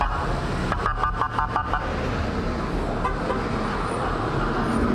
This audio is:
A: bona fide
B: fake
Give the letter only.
A